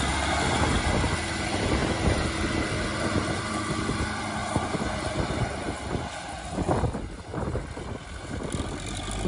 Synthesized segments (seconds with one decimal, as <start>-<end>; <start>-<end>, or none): none